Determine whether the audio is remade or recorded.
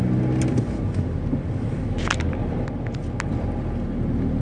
recorded